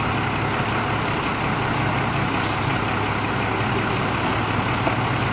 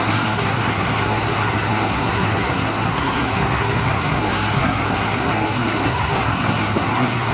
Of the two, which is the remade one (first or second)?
second